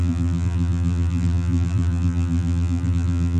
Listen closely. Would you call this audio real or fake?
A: fake